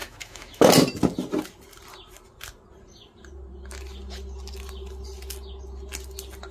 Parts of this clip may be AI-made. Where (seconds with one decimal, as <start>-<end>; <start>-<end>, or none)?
0.0-0.7